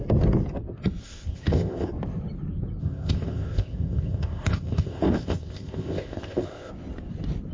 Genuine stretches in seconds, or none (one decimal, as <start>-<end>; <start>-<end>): 0.0-1.0; 1.9-2.8; 6.7-7.5